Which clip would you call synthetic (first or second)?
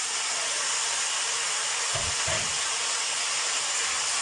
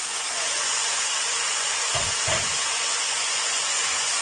second